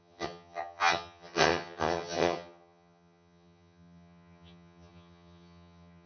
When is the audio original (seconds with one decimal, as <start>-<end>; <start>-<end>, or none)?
none